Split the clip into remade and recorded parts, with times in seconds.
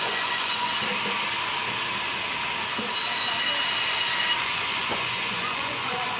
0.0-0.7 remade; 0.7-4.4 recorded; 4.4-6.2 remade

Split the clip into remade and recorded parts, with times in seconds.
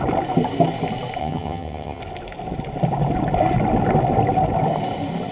0.0-1.2 recorded; 1.2-2.0 remade; 2.0-5.3 recorded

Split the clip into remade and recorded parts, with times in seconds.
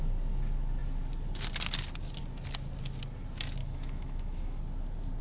0.0-3.6 recorded; 3.6-4.6 remade; 4.6-5.2 recorded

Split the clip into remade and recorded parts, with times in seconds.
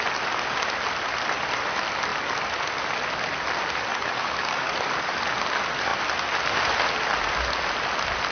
0.0-3.9 recorded; 3.9-5.2 remade; 5.2-8.3 recorded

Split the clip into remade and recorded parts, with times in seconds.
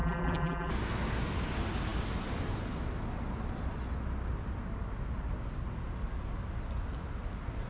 0.0-0.7 remade; 0.7-7.7 recorded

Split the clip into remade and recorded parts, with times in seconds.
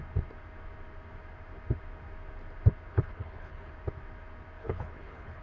0.0-2.9 recorded; 2.9-3.7 remade; 3.7-4.6 recorded; 4.6-5.4 remade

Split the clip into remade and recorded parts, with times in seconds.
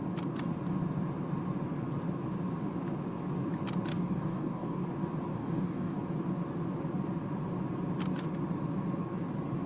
0.0-3.9 recorded; 3.9-4.8 remade; 4.8-5.3 recorded; 5.3-6.0 remade; 6.0-9.7 recorded